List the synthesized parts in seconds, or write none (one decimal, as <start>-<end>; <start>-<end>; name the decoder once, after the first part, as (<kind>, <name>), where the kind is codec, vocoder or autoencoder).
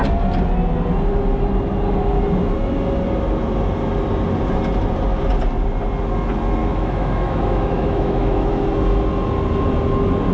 6.6-8.5 (autoencoder, DAC-VAE)